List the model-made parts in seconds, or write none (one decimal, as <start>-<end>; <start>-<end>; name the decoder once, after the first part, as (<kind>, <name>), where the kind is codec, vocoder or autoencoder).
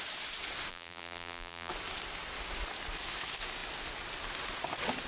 0.7-1.7 (vocoder, BigVGAN v2)